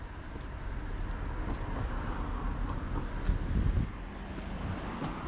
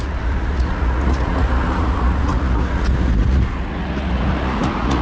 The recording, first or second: first